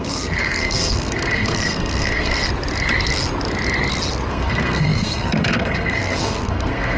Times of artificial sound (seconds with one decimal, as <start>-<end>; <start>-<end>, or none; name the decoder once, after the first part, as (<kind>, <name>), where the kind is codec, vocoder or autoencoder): 0.0-2.4 (codec, SNAC); 4.3-7.0